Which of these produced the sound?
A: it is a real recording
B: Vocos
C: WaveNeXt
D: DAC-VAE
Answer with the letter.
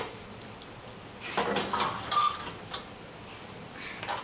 A